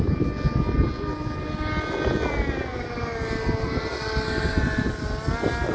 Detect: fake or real real